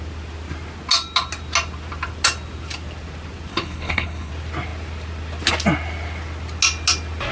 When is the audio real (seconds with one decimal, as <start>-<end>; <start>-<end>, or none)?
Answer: 0.0-3.5; 4.3-7.3